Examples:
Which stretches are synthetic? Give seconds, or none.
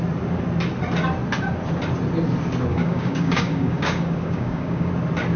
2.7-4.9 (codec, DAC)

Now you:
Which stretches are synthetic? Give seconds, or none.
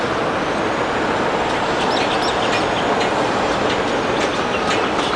none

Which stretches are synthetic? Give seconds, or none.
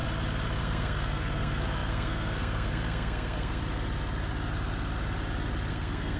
0.6-3.6 (codec, SNAC); 5.7-6.2